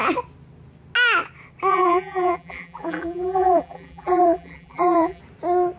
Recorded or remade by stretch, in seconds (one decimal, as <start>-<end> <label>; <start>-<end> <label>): 0.0-1.7 recorded; 1.7-5.2 remade; 5.2-5.8 recorded